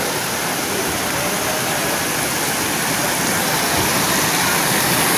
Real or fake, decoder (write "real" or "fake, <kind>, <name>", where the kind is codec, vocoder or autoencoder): fake, vocoder, BigVGAN v2